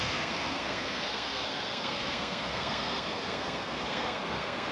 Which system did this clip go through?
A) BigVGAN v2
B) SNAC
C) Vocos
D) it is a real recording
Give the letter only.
B